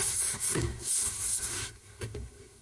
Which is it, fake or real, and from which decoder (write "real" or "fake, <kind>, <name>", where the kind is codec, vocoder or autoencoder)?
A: fake, codec, SNAC